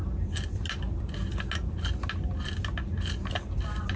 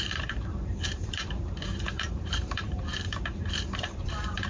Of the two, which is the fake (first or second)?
second